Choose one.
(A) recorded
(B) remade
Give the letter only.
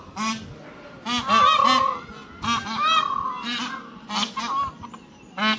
A